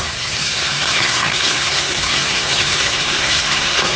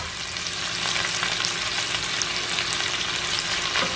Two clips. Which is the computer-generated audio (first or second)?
first